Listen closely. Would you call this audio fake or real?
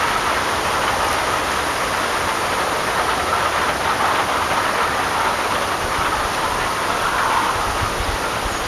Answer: real